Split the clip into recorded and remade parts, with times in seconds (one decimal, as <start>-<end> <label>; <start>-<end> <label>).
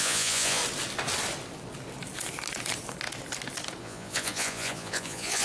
0.0-0.6 remade; 0.6-3.8 recorded; 3.8-5.4 remade